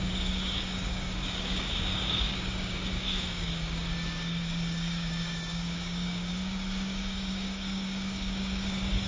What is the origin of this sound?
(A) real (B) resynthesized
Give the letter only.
B